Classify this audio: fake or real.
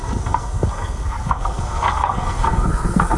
fake